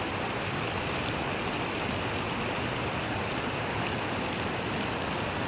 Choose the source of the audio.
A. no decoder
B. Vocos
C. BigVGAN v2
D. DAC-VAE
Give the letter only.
A